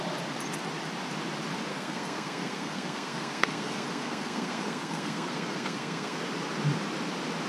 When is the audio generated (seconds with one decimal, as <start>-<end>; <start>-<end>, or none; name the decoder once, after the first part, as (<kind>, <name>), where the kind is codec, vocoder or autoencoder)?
1.7-6.2 (codec, SNAC)